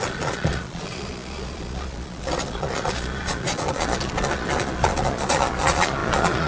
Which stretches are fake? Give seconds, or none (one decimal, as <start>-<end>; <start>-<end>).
0.0-6.5